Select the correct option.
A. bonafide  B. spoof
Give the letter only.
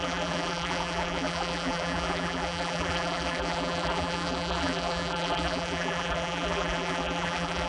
B